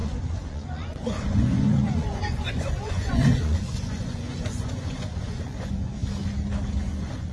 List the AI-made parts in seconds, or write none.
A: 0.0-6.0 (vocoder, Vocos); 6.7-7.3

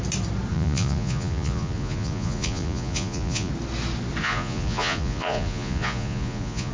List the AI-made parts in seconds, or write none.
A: 0.5-3.5 (vocoder, Vocos); 4.2-6.7

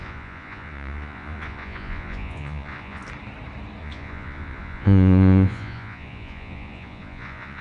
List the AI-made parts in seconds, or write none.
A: 0.0-3.0 (vocoder, Vocos); 3.8-7.6

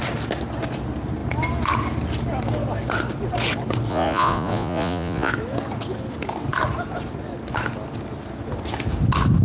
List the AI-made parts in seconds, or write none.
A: 3.9-5.3 (vocoder, Vocos)

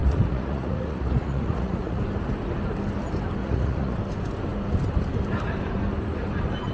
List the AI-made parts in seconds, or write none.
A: 0.0-2.0 (vocoder, Vocos); 3.4-4.0